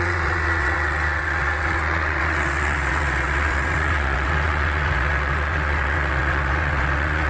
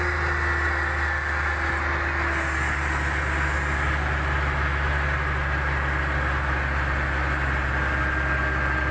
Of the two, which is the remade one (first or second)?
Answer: first